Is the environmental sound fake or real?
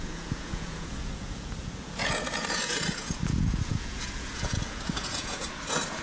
fake